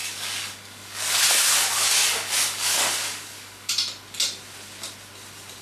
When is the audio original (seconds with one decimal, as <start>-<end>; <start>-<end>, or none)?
1.2-1.7; 3.7-5.6